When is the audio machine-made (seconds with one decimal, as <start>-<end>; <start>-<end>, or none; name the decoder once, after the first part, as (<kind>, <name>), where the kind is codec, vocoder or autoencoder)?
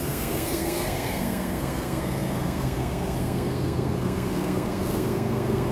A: 0.0-5.7 (codec, SNAC)